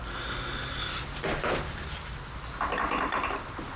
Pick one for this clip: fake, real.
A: real